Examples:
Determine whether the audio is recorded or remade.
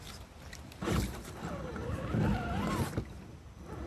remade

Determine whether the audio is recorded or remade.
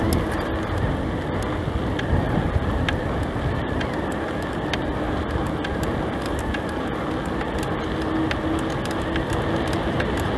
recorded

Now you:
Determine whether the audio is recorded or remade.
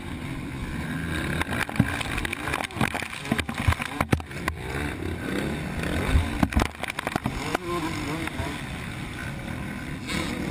recorded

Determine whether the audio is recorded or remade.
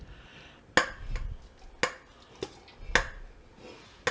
recorded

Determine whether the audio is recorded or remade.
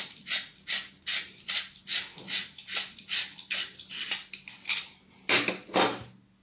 recorded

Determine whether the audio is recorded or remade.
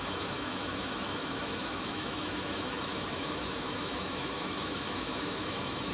remade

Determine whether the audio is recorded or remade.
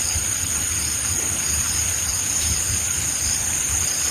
recorded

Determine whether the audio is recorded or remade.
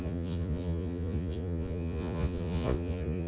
remade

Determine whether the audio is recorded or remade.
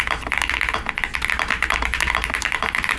recorded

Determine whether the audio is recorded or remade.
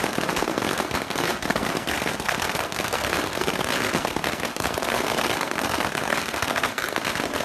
remade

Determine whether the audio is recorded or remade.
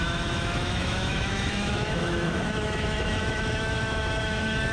remade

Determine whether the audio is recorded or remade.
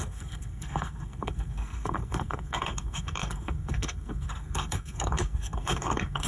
remade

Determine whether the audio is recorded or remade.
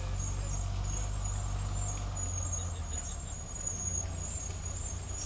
recorded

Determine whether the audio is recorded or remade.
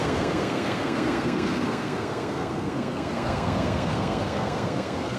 remade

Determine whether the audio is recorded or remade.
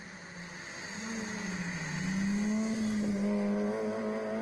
recorded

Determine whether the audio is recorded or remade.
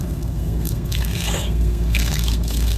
remade